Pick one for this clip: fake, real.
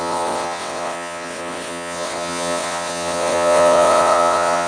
fake